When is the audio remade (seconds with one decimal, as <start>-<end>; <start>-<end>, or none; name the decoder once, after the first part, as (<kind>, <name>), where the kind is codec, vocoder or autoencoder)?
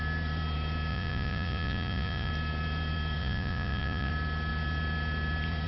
0.9-2.3 (vocoder, Vocos); 3.2-4.1